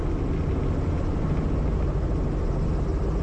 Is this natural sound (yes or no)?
yes